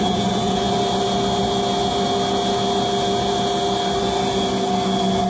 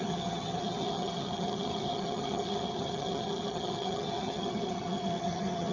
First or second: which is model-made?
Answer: second